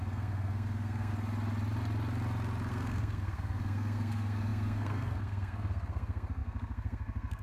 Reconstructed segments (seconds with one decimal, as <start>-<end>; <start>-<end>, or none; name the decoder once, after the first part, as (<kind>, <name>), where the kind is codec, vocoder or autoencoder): 0.0-1.1 (codec, SNAC); 2.7-7.4